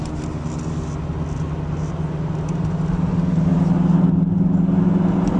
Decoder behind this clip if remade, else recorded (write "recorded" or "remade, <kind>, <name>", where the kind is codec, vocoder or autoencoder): recorded